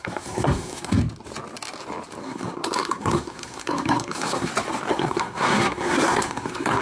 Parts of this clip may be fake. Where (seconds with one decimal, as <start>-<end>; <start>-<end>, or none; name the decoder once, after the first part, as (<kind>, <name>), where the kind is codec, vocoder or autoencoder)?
0.0-1.0 (codec, SNAC); 2.2-4.5; 4.9-6.8